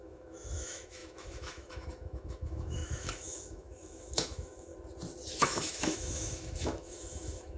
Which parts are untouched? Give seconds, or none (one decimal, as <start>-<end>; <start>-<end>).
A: 4.7-5.4